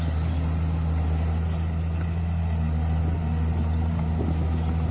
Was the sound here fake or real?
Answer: real